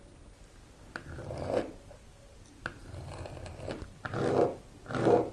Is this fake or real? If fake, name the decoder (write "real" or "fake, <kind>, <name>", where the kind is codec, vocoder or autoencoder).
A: fake, vocoder, BigVGAN v2